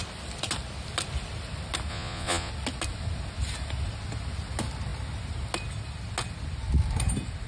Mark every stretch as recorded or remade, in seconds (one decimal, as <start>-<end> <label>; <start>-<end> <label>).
0.0-1.9 recorded; 1.9-2.5 remade; 2.5-7.5 recorded